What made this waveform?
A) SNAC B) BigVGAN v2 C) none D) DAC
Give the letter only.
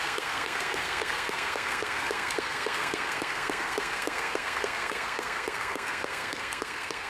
A